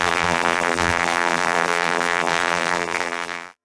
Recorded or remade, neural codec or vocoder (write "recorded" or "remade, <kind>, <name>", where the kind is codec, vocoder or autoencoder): remade, vocoder, BigVGAN v2